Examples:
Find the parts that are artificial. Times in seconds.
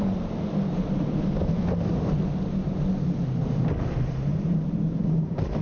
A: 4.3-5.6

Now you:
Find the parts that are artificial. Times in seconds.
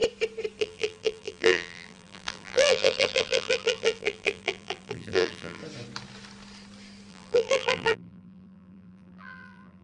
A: 0.6-5.6; 7.1-9.8